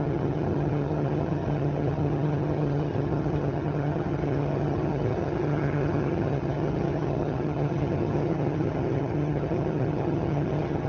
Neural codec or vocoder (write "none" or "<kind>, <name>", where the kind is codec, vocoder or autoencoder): vocoder, HiFi-GAN